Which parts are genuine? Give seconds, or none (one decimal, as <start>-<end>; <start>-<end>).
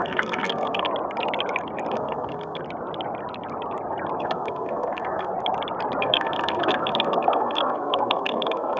0.9-1.9; 2.6-4.2; 5.3-6.0